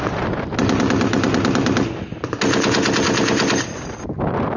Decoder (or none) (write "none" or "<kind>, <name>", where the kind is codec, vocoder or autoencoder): none